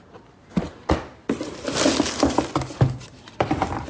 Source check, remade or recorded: recorded